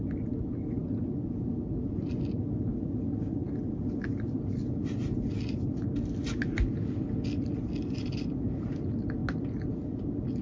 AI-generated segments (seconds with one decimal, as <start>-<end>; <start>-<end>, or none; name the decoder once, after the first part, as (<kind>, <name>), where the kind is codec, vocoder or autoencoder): none